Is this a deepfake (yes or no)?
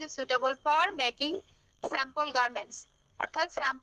yes